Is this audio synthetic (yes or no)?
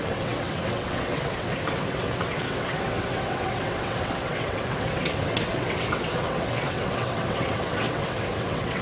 yes